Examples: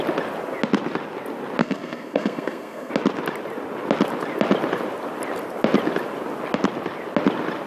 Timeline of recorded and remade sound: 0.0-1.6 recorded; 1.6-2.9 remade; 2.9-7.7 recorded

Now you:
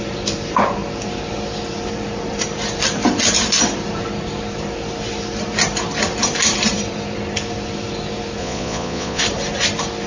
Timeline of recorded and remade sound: 0.0-8.4 recorded; 8.4-9.2 remade; 9.2-10.1 recorded

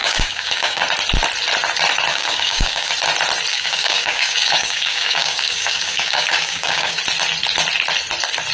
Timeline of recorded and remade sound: 0.0-0.8 remade; 0.8-2.1 recorded; 2.1-2.9 remade; 2.9-3.5 recorded; 3.5-7.0 remade; 7.0-8.5 recorded